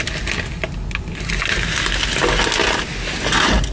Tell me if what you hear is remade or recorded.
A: recorded